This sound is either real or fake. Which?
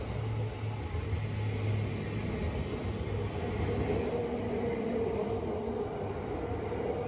real